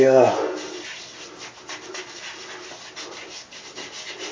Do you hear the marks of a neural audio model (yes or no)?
no